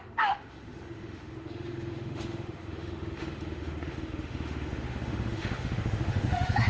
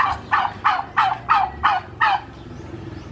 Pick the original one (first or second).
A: second